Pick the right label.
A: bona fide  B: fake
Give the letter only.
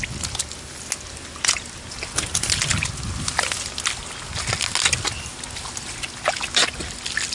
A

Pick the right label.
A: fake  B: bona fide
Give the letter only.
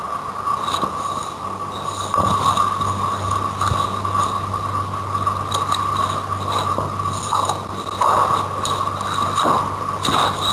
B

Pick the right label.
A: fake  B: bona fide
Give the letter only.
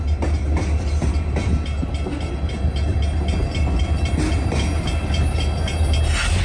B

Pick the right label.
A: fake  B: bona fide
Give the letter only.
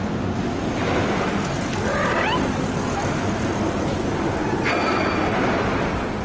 B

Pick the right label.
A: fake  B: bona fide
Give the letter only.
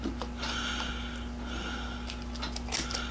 B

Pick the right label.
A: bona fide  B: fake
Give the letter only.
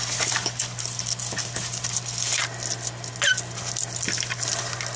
A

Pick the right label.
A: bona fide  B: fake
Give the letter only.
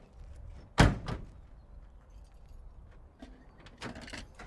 A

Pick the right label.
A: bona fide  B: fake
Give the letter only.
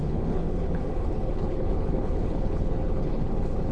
B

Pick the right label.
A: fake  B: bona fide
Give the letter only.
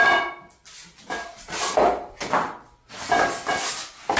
B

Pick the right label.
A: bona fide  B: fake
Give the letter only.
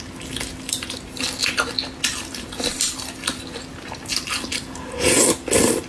A